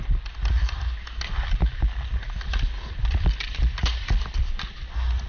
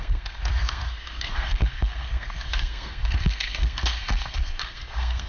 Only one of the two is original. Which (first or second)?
first